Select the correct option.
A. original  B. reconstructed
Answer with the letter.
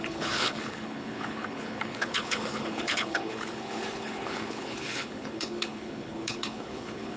B